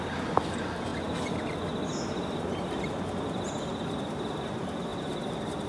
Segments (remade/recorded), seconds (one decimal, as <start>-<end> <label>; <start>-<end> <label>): 0.0-5.7 recorded